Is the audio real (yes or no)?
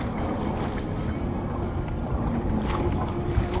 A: yes